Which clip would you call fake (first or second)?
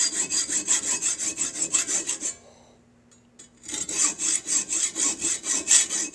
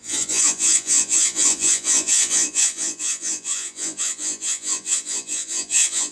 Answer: second